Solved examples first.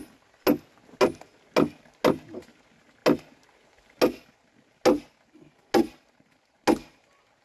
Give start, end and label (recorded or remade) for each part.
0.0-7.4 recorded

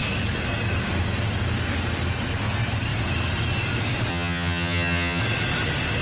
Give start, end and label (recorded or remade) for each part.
0.0-4.1 recorded; 4.1-5.2 remade; 5.2-6.0 recorded

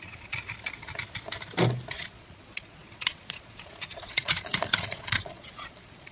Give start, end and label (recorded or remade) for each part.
0.0-0.4 remade; 0.4-1.9 recorded; 1.9-6.1 remade

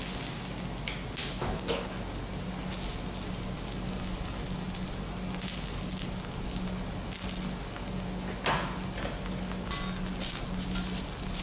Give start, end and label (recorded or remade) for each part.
0.0-1.2 recorded; 1.2-1.9 remade; 1.9-11.4 recorded